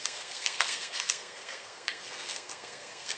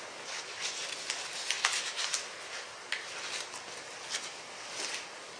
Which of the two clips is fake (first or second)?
first